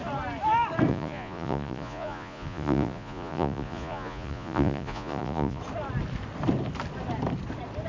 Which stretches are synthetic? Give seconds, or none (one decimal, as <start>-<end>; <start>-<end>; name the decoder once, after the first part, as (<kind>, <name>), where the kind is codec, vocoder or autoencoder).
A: 0.9-5.6 (vocoder, Vocos)